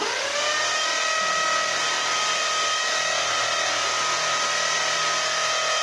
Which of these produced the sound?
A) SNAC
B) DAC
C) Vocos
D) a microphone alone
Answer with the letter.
D